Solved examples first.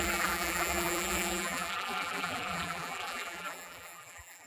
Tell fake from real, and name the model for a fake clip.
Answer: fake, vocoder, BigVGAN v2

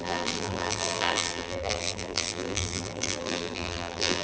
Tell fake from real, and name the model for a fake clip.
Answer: fake, vocoder, BigVGAN v2